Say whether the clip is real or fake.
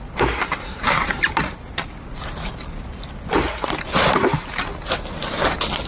real